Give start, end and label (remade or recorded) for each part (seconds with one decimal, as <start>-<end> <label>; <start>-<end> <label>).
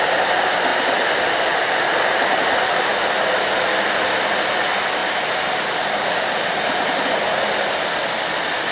0.0-5.0 recorded; 5.0-6.5 remade; 6.5-8.7 recorded